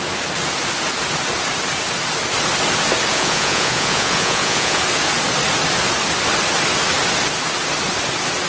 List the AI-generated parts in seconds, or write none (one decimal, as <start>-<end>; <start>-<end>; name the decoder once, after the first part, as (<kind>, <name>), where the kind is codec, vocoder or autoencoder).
3.1-4.8 (vocoder, Vocos)